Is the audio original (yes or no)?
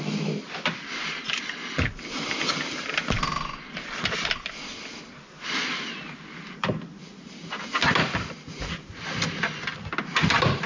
yes